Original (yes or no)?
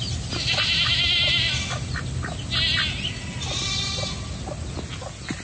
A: yes